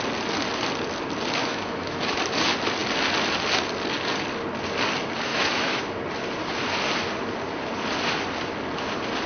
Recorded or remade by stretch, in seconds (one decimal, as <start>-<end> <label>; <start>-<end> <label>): 0.0-1.4 recorded; 1.4-2.2 remade; 2.2-5.3 recorded; 5.3-5.8 remade; 5.8-9.3 recorded